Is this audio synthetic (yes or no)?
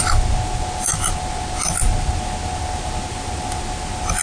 no